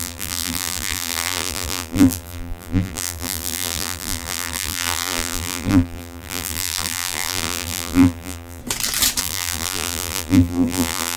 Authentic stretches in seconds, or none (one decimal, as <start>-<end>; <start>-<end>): 8.6-9.2